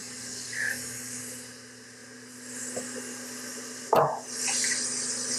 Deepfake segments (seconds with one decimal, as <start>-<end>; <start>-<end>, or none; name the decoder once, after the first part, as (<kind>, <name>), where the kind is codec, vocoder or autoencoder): 0.0-1.2 (codec, DAC)